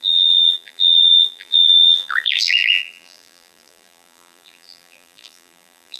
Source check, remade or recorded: remade